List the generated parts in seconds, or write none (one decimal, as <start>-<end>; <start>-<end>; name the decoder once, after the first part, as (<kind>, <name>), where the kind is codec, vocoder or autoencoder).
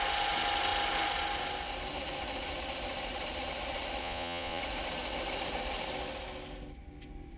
4.0-4.6 (vocoder, Vocos)